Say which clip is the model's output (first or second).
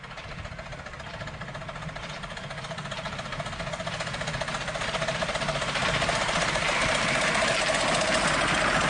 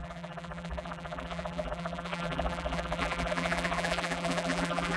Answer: second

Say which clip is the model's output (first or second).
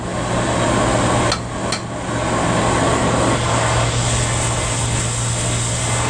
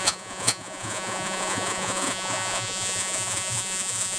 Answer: second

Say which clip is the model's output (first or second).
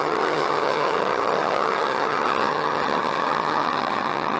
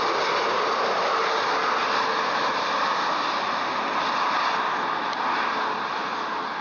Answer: first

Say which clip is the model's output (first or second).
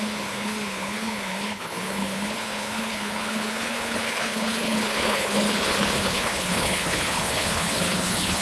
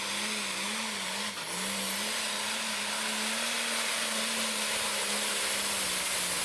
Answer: first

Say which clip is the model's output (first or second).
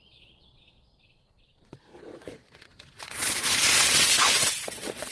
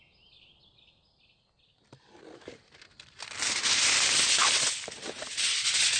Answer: first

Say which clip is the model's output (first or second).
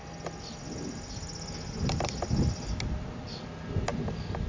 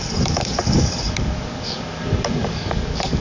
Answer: second